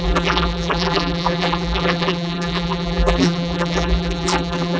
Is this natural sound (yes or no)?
no